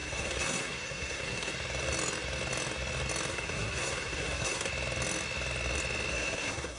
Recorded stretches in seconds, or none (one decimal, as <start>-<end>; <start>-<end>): 1.5-3.3; 4.7-6.1